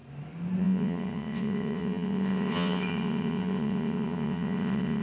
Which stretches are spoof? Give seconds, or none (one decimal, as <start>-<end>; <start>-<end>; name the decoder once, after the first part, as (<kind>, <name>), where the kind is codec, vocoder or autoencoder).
0.6-5.0 (vocoder, WaveNeXt)